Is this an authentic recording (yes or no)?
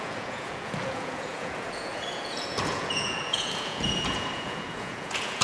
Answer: no